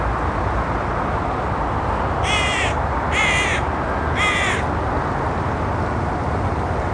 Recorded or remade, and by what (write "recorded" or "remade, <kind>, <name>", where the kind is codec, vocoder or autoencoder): recorded